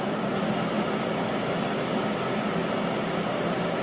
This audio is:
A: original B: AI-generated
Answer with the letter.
A